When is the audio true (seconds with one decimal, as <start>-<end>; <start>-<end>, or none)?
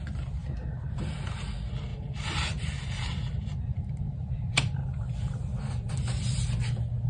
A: 0.0-1.9; 6.2-7.1